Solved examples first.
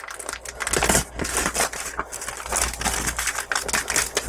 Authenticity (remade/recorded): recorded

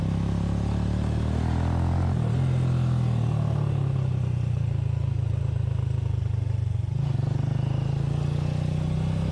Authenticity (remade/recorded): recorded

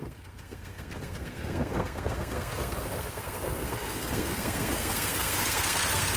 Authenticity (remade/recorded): remade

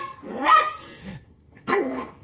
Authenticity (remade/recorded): remade